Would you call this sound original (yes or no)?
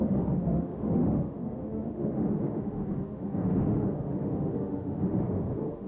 no